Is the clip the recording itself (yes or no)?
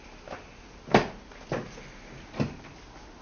yes